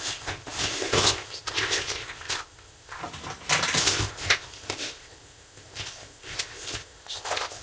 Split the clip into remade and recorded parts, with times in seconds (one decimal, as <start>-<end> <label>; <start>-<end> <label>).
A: 0.0-3.0 remade; 3.0-3.8 recorded; 3.8-7.6 remade